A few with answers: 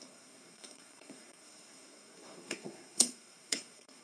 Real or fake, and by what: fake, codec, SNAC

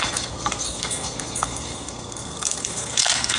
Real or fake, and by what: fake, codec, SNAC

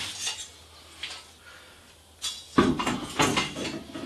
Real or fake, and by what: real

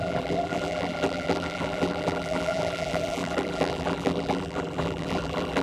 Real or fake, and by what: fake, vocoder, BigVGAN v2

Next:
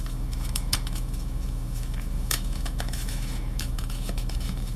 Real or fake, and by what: fake, autoencoder, DAC-VAE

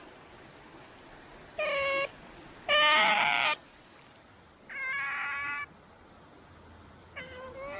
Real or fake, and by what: real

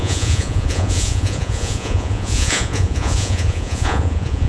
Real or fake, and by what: fake, vocoder, Vocos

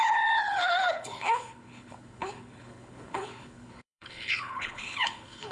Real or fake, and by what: fake, codec, HILCodec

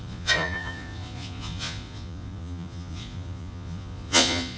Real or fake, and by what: fake, vocoder, Vocos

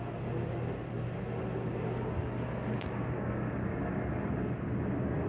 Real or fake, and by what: real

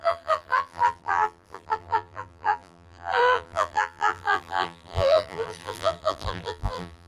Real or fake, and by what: fake, vocoder, BigVGAN v2